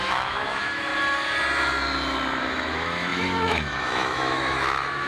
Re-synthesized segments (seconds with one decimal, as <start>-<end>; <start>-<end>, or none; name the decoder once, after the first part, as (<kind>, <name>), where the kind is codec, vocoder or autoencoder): 0.0-0.9 (autoencoder, DAC-VAE); 2.4-5.1